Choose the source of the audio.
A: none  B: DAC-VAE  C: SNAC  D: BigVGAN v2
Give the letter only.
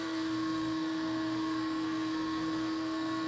C